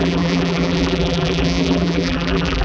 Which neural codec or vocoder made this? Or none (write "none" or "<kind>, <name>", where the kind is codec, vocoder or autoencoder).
vocoder, BigVGAN v2